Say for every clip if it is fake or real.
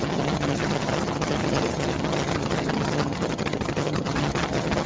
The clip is fake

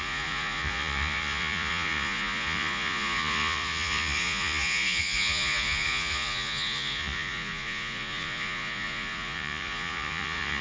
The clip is fake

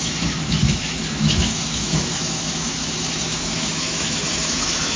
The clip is fake